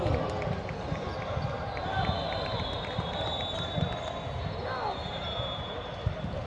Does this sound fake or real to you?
real